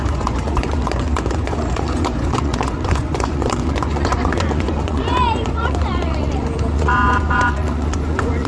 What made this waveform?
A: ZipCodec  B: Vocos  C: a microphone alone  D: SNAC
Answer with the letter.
B